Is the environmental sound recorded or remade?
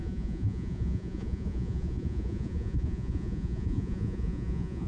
remade